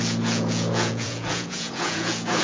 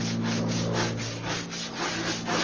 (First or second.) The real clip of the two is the second